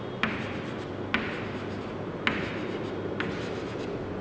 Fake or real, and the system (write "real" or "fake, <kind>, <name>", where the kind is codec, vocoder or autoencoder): real